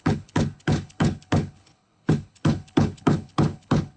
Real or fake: fake